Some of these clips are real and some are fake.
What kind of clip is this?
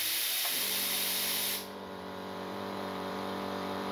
fake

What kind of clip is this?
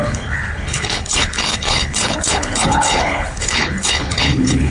fake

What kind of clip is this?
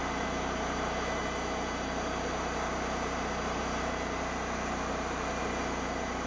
fake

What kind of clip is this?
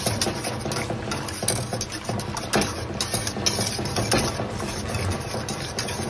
real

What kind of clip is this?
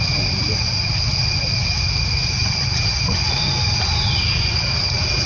real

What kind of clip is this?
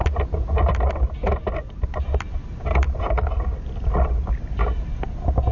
real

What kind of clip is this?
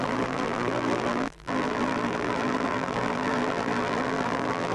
fake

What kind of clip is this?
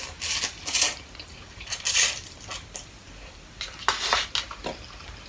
real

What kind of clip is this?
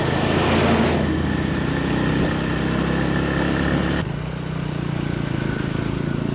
real